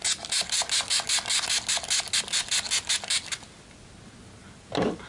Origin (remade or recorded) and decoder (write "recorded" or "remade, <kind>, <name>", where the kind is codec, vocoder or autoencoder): recorded